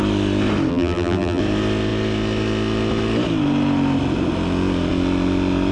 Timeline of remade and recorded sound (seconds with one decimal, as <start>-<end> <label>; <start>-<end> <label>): 0.0-0.7 recorded; 0.7-1.4 remade; 1.4-5.7 recorded